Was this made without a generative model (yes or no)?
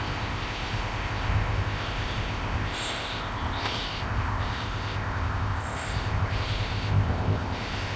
no